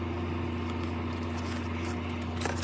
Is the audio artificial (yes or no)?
no